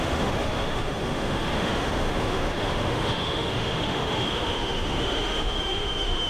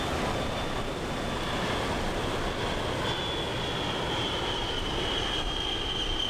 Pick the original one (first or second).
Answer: second